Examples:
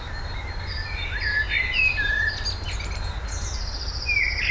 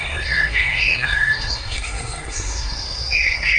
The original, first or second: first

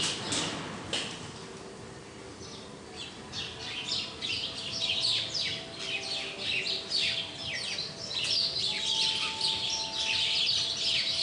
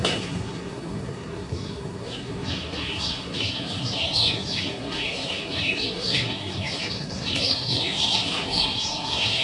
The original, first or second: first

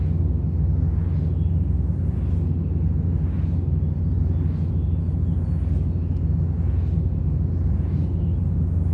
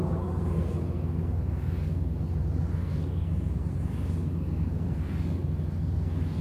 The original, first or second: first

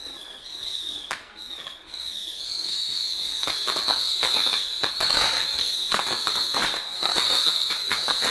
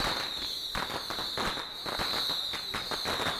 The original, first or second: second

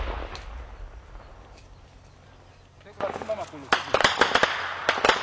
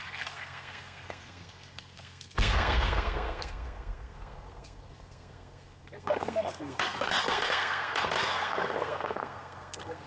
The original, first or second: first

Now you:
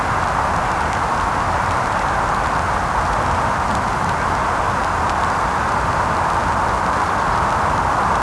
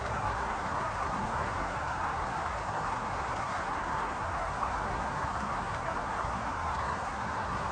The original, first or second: first